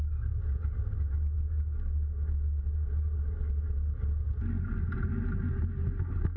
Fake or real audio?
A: real